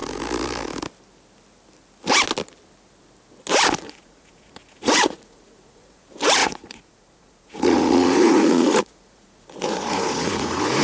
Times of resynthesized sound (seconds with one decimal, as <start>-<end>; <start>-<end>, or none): 3.8-10.8